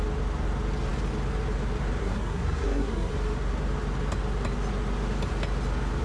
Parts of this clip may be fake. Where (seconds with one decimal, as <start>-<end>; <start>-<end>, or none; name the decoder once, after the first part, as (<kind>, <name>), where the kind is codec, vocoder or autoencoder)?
2.0-3.1 (codec, SNAC)